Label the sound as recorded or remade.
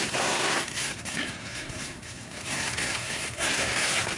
remade